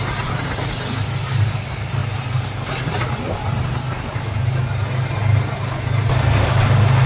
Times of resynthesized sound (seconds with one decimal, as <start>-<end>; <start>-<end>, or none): none

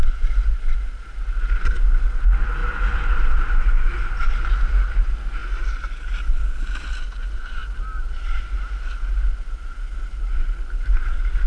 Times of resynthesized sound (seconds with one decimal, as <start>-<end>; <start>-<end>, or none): none

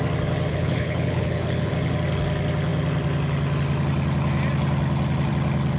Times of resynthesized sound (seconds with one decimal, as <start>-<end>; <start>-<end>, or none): 0.5-1.7

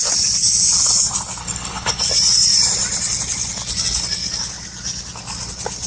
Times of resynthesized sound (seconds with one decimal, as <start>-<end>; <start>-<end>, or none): 1.4-2.0

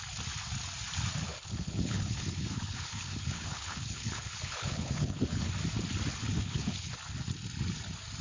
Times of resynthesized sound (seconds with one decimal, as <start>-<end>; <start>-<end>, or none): 1.3-5.5; 6.2-6.9